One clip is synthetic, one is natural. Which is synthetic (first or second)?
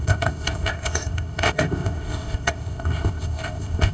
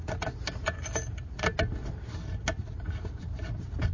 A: first